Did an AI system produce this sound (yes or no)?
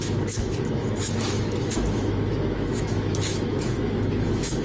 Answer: yes